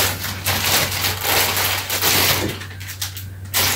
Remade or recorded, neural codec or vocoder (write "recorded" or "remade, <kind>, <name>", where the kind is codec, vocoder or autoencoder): recorded